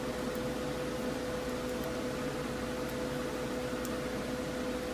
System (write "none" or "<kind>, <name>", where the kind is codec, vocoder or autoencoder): none